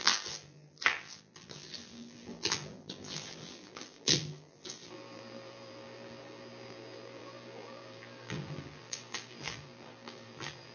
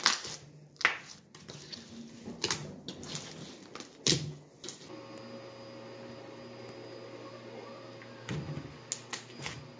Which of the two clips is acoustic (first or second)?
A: second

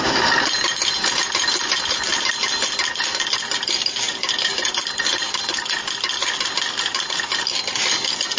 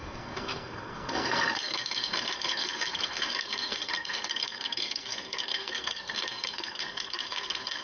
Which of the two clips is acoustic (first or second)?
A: first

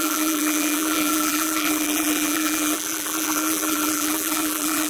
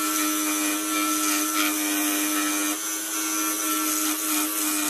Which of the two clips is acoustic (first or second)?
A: second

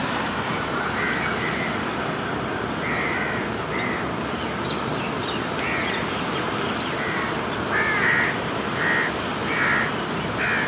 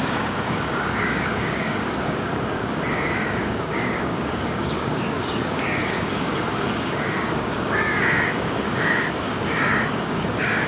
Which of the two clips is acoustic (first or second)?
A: first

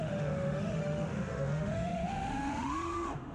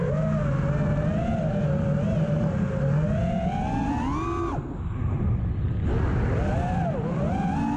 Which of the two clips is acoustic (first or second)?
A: second